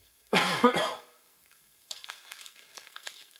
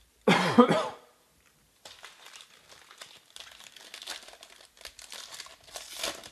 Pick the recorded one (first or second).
second